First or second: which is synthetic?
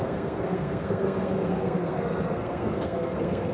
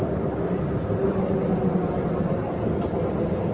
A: first